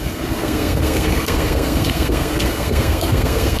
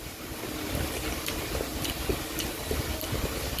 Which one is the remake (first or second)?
first